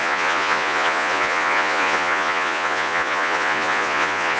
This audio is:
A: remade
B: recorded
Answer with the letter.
A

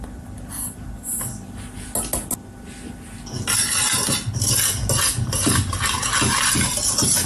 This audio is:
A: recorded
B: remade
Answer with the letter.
A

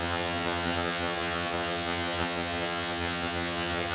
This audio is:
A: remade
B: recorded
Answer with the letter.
A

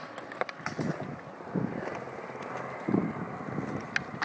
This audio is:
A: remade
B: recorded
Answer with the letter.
B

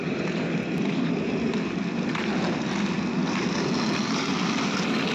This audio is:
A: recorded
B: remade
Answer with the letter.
A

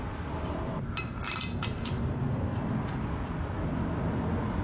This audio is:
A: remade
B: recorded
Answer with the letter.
B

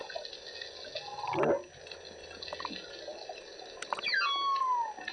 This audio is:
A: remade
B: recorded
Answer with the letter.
B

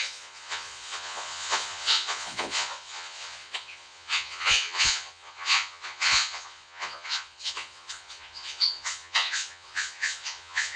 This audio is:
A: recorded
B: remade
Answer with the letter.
B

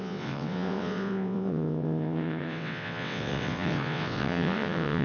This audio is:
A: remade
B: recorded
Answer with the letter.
A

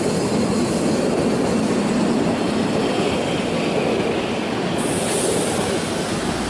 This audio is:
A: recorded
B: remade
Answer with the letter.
A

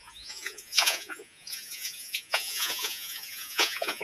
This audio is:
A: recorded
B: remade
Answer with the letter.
B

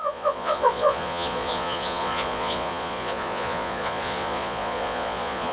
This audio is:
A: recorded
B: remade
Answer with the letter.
B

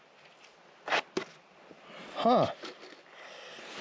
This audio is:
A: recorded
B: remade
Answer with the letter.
A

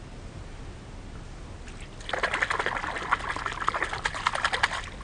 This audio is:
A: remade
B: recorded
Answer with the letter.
B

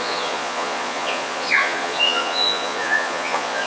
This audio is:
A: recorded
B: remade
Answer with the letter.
B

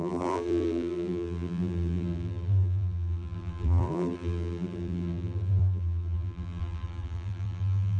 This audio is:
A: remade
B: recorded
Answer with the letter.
A